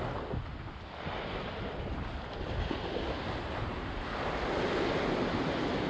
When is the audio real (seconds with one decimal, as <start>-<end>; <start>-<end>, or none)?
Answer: 0.0-5.9